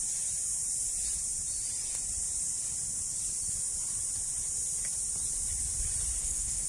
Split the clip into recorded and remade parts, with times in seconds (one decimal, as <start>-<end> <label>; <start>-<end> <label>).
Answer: 0.0-6.2 recorded; 6.2-6.7 remade